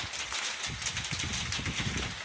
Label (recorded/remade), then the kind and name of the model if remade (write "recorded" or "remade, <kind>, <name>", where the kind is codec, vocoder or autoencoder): recorded